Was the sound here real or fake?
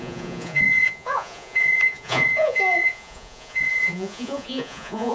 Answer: fake